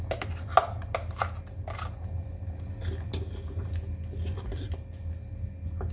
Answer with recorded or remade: recorded